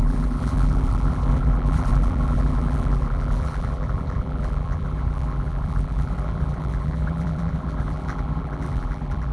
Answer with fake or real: fake